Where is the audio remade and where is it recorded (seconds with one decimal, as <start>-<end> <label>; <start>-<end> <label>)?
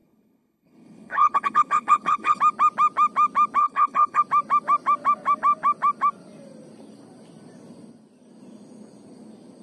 0.0-2.4 remade; 2.4-3.6 recorded; 3.6-4.2 remade; 4.2-9.6 recorded